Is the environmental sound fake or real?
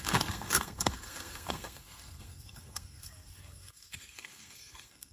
fake